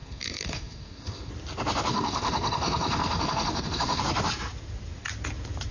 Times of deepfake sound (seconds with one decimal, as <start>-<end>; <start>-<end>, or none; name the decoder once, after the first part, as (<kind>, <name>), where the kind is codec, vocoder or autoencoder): 0.0-1.3 (codec, SNAC); 1.9-4.0